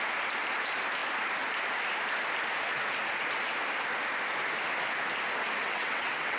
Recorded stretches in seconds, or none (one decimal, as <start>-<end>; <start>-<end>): 0.0-5.6